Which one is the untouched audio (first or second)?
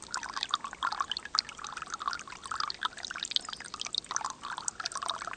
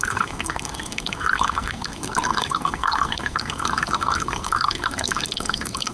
first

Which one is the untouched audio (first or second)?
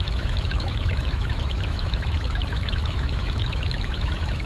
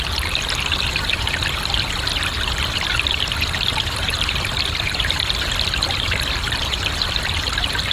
second